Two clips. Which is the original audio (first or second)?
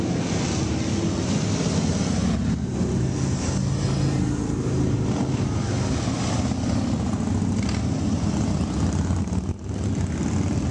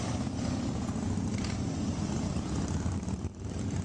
first